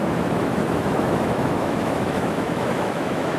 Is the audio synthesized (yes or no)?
yes